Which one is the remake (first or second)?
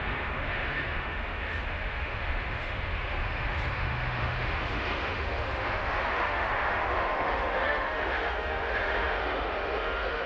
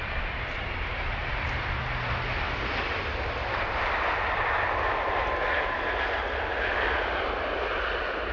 first